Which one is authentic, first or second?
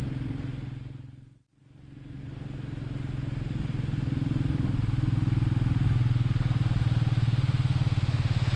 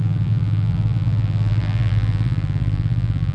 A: first